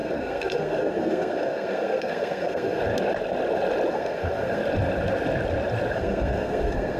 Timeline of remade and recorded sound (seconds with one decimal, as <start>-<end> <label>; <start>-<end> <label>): 0.0-2.8 remade; 2.8-3.9 recorded; 3.9-4.6 remade; 4.6-5.9 recorded; 5.9-7.0 remade